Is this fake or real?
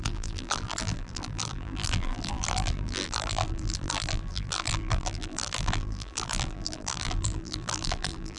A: fake